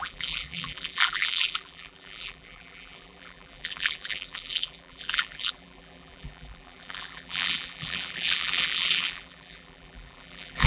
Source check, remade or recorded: remade